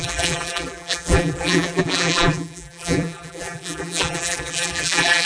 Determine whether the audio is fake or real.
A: fake